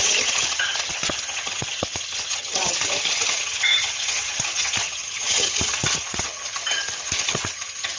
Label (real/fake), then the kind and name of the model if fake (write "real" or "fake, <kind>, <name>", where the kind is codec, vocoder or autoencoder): fake, vocoder, HiFi-GAN